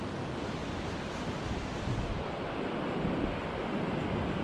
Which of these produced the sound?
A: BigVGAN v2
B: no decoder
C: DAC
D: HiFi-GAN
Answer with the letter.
B